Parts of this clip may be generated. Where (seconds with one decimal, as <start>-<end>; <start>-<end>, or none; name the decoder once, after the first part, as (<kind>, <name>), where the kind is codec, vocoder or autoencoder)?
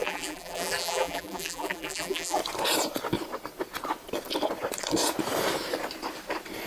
0.0-2.4 (vocoder, BigVGAN v2)